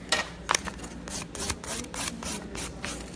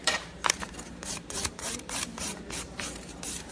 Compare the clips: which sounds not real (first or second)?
second